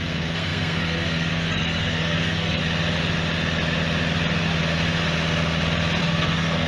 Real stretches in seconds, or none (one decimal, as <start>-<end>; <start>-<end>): 2.6-6.0